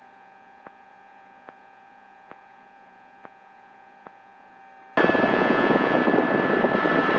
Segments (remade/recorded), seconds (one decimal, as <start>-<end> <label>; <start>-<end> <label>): 0.0-4.6 remade; 4.6-5.3 recorded; 5.3-6.0 remade; 6.0-7.2 recorded